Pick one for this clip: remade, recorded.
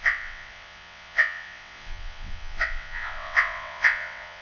remade